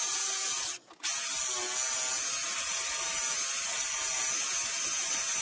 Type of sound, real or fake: real